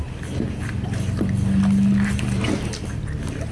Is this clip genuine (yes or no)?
yes